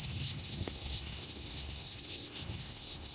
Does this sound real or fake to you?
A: fake